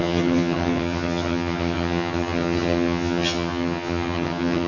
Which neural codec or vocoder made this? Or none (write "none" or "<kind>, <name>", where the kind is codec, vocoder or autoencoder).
vocoder, HiFi-GAN